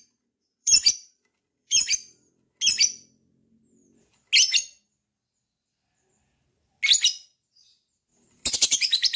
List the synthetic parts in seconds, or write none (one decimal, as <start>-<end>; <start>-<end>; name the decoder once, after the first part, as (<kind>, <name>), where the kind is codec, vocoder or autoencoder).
0.6-2.3 (vocoder, BigVGAN v2); 8.1-9.2